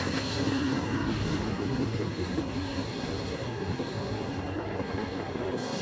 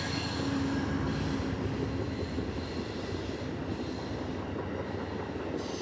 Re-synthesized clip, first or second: first